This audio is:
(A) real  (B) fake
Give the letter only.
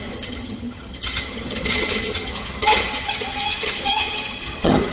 B